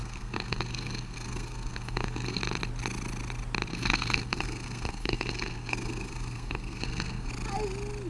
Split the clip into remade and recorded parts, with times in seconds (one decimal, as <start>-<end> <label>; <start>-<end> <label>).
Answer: 0.0-2.4 remade; 2.4-3.7 recorded; 3.7-7.3 remade; 7.3-8.1 recorded

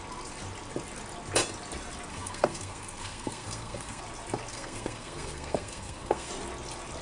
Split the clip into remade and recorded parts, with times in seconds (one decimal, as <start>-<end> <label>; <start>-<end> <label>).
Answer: 0.0-2.1 recorded; 2.1-4.0 remade; 4.0-4.5 recorded; 4.5-6.3 remade; 6.3-7.0 recorded

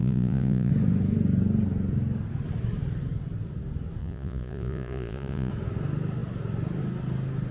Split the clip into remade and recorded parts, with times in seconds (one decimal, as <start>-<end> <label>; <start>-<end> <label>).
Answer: 0.0-0.7 remade; 0.7-4.0 recorded; 4.0-5.5 remade; 5.5-7.5 recorded

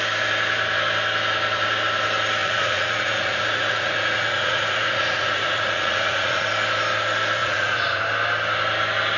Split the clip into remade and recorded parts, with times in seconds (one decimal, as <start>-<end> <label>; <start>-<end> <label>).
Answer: 0.0-2.4 recorded; 2.4-6.5 remade; 6.5-7.4 recorded; 7.4-8.0 remade; 8.0-9.2 recorded

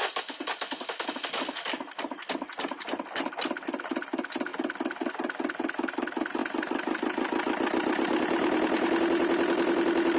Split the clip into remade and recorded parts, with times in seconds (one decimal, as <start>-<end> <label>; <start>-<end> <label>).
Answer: 0.0-10.2 recorded

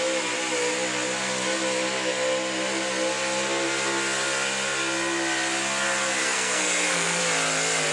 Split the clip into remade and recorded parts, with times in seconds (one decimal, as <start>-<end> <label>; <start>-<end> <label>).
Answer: 0.0-6.2 recorded; 6.2-7.2 remade; 7.2-7.9 recorded